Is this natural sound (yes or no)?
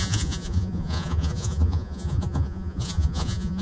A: no